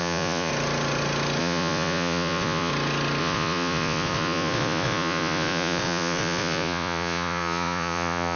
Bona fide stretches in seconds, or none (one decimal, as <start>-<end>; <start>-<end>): 0.5-1.4; 2.7-3.2